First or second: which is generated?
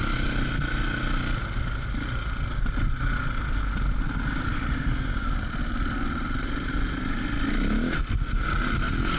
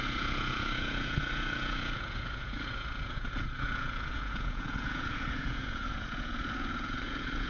second